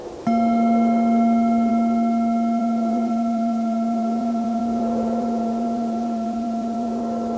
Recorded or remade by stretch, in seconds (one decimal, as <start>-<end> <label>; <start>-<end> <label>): 0.0-2.6 recorded; 2.6-7.0 remade; 7.0-7.4 recorded